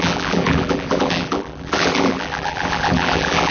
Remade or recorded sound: remade